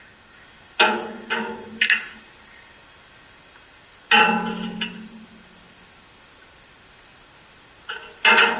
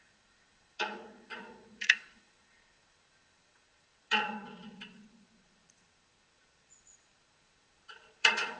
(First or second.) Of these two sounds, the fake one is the second